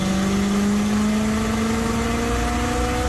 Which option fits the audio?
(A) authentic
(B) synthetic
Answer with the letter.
A